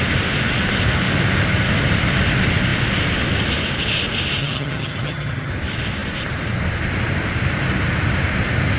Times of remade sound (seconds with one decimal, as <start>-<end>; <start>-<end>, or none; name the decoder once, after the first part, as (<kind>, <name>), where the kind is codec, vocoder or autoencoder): 4.4-5.5 (vocoder, HiFi-GAN)